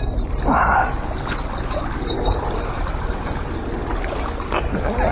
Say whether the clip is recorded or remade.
recorded